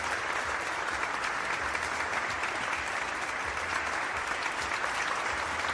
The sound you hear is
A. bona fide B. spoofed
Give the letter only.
B